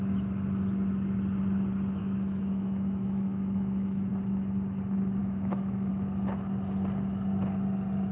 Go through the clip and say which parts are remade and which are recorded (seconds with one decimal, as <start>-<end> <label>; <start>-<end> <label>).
0.0-2.0 recorded; 2.0-4.1 remade; 4.1-5.2 recorded; 5.2-5.9 remade; 5.9-8.1 recorded